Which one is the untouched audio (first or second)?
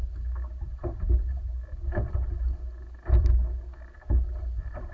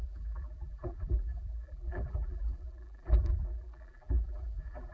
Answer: first